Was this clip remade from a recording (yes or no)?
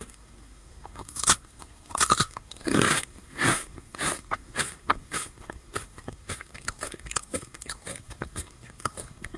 yes